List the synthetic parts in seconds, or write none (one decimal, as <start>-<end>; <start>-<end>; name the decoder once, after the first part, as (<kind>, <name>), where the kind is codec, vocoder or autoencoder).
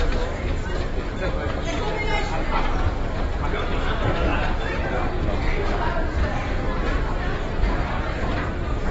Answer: none